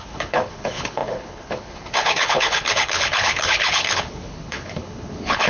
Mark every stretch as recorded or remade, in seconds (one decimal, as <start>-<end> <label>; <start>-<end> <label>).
0.0-5.5 remade

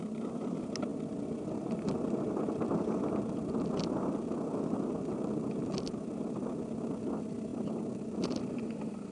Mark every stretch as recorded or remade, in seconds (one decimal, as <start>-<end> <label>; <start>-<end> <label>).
0.0-9.1 recorded

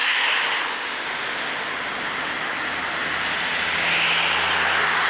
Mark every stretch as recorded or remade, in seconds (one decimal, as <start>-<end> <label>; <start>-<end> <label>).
0.0-5.1 recorded